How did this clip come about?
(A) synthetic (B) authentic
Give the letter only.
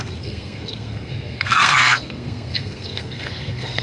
A